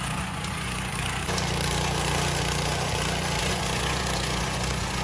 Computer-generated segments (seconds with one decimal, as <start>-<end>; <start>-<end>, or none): 0.0-1.2; 3.4-5.0